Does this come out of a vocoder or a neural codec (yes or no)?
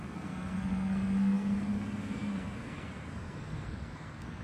yes